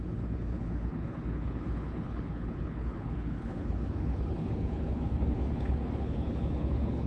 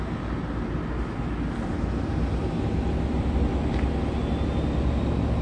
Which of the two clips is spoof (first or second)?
first